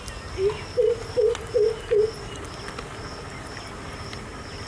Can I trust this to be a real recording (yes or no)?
yes